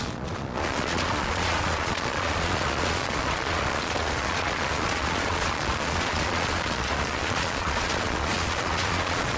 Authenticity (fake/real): fake